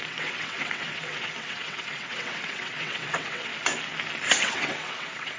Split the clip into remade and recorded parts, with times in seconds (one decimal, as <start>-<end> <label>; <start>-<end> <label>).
0.0-3.5 remade; 3.5-4.4 recorded; 4.4-5.4 remade